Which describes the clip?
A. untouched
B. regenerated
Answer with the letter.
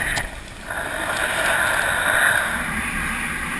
A